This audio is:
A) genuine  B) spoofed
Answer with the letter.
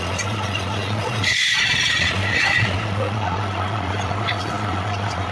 B